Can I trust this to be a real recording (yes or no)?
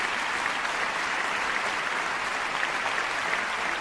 yes